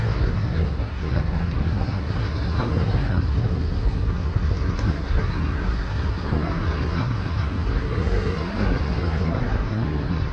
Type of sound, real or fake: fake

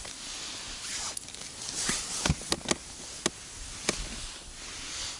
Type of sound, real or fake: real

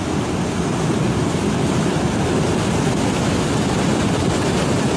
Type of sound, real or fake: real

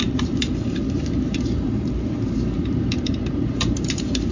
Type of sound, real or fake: fake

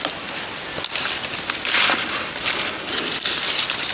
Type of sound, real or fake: real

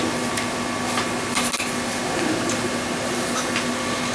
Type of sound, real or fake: real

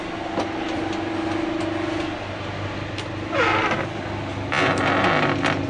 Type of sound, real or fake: real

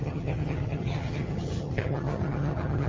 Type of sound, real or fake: fake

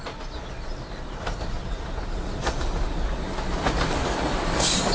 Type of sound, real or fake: real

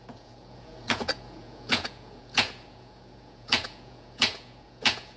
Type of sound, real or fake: fake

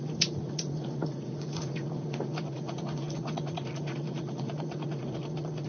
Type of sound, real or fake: fake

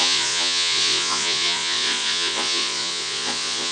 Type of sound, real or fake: fake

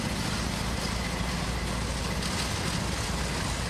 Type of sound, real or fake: real